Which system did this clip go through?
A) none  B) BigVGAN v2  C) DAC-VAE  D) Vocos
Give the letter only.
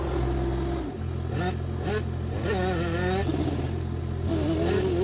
A